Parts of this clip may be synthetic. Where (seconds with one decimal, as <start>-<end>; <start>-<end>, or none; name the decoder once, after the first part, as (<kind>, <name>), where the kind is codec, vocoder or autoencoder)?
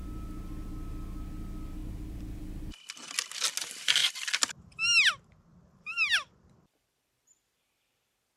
5.5-8.4 (vocoder, BigVGAN v2)